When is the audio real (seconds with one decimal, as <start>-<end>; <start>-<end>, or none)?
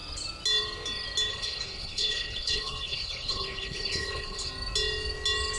0.0-1.3; 4.5-5.6